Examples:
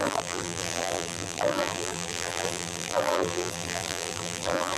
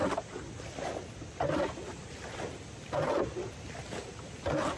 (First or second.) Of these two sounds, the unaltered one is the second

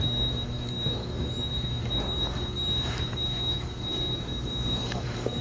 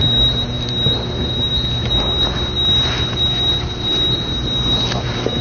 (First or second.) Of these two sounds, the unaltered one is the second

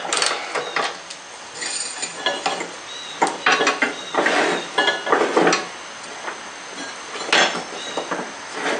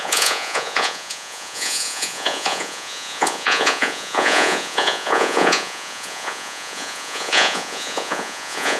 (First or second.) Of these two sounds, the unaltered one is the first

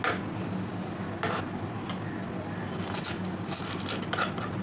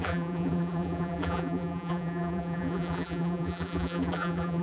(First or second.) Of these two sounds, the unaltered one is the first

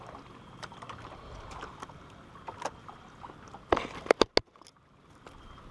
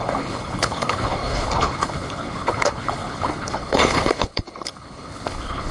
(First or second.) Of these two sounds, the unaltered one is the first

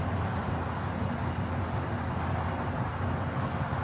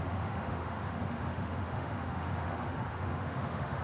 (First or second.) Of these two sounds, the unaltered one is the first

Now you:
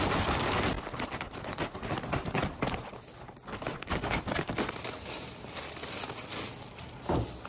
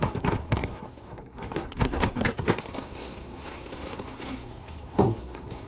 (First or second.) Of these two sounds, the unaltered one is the first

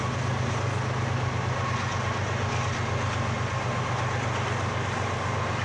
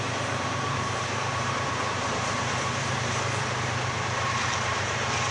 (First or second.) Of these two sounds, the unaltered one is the first